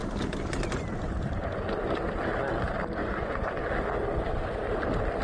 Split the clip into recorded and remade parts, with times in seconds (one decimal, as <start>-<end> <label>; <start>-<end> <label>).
0.0-3.0 recorded; 3.0-3.6 remade; 3.6-5.2 recorded